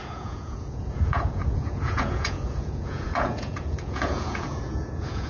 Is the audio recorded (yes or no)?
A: no